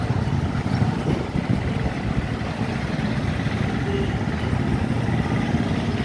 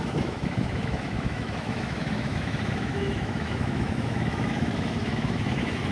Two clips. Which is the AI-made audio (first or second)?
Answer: second